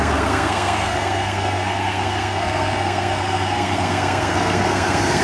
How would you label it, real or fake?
fake